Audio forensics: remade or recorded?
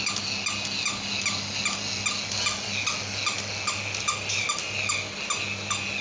recorded